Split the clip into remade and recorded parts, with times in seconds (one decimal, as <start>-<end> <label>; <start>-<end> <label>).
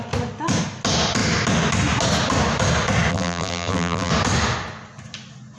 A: 0.0-3.1 recorded; 3.1-4.1 remade; 4.1-5.6 recorded